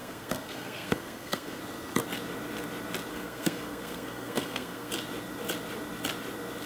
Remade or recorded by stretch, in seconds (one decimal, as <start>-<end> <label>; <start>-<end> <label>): 0.0-1.6 remade; 1.6-3.1 recorded; 3.1-4.9 remade; 4.9-6.7 recorded